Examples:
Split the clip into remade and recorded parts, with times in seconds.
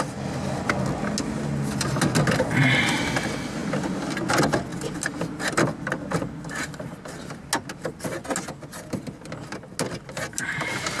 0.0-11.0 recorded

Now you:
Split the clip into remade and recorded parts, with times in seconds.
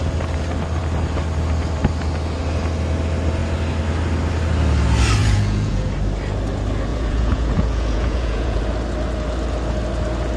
0.0-5.2 recorded; 5.2-5.9 remade; 5.9-6.9 recorded; 6.9-8.6 remade; 8.6-10.4 recorded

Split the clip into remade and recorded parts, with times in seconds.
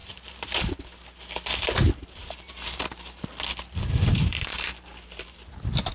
0.0-0.7 remade; 0.7-2.2 recorded; 2.2-3.2 remade; 3.2-4.3 recorded; 4.3-5.5 remade; 5.5-5.9 recorded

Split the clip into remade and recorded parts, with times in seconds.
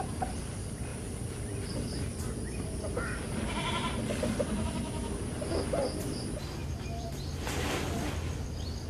0.0-6.6 recorded; 6.6-7.4 remade; 7.4-8.9 recorded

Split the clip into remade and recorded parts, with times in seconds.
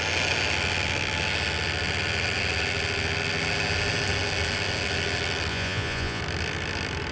0.0-5.5 recorded; 5.5-6.2 remade; 6.2-7.1 recorded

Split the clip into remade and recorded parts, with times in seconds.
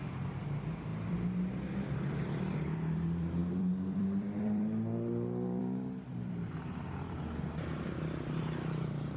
0.0-9.2 remade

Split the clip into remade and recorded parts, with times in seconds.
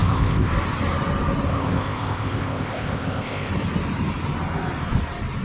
0.0-0.5 remade; 0.5-1.5 recorded; 1.5-3.5 remade; 3.5-5.4 recorded